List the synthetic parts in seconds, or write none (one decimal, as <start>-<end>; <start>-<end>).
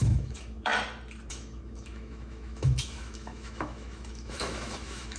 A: 0.0-0.7; 1.3-5.2